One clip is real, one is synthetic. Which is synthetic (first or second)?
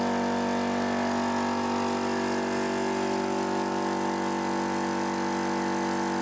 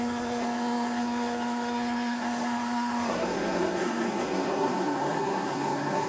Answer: second